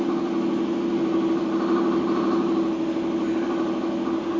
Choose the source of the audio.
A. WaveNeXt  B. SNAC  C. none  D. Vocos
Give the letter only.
C